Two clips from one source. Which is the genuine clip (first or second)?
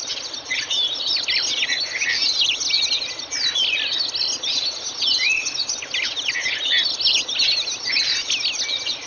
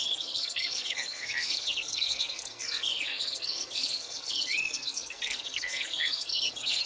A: first